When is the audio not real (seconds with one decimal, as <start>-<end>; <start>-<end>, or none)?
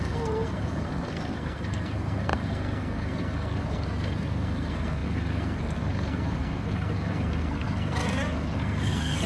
0.0-9.3